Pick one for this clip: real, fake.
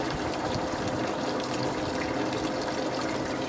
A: real